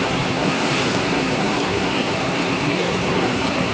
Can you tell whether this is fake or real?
fake